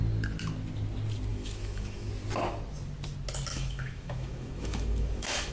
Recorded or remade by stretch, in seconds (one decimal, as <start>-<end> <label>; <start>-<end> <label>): 0.0-1.3 recorded; 1.3-2.1 remade; 2.1-3.5 recorded; 3.5-5.5 remade